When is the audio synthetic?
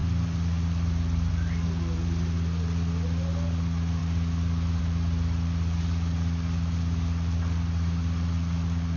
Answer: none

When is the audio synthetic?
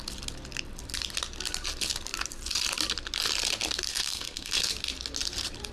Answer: 3.9-4.7 (codec, SNAC)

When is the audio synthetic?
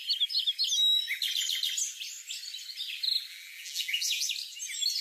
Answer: 3.3-4.2 (vocoder, BigVGAN v2)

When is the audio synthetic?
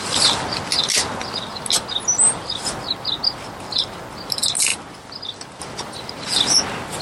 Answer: none